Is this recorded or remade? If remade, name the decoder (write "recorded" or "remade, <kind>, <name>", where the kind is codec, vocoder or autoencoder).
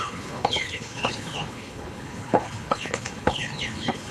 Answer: remade, codec, HILCodec